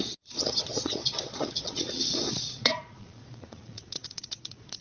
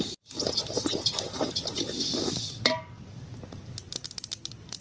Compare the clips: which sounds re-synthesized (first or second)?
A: first